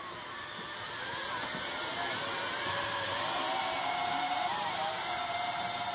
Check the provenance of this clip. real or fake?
fake